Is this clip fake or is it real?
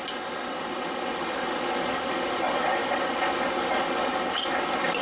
real